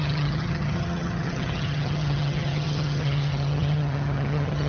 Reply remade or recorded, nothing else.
remade